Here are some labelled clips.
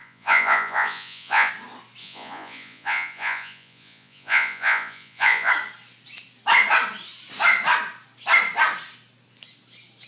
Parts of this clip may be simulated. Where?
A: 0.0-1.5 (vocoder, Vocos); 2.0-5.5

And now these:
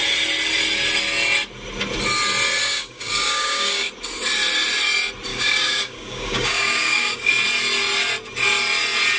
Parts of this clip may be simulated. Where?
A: 2.6-3.9 (codec, DAC); 5.3-7.3